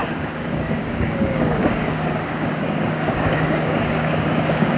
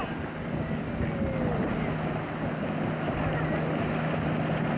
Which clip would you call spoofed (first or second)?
first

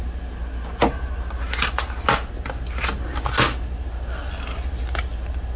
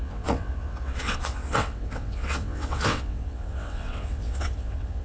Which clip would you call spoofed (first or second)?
second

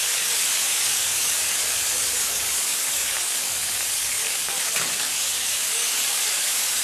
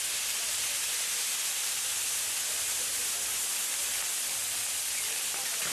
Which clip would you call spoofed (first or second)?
first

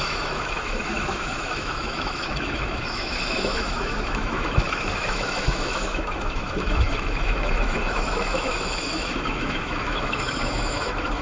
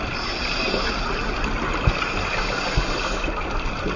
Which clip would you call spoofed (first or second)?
first